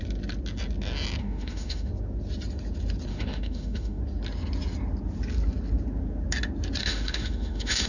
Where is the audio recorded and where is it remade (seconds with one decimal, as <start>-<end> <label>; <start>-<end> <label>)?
0.0-1.2 recorded; 1.2-1.9 remade; 1.9-3.1 recorded; 3.1-4.0 remade; 4.0-6.8 recorded; 6.8-7.9 remade